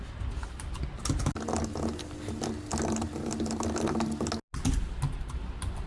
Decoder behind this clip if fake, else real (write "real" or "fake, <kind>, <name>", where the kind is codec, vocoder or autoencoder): real